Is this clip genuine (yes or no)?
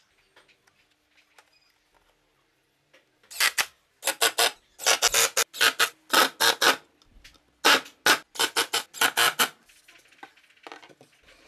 yes